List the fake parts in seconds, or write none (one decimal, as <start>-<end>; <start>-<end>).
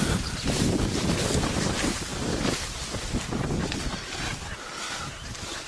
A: 0.0-4.3; 5.0-5.7